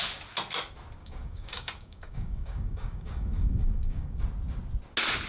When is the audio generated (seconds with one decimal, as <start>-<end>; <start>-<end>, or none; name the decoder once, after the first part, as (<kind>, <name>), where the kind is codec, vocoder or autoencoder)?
1.0-4.2 (codec, DAC)